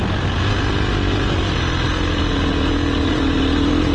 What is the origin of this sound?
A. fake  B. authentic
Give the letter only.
B